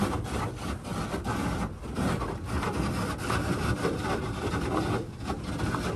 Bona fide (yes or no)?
yes